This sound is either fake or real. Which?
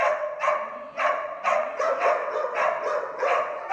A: fake